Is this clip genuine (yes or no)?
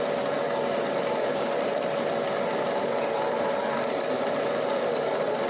yes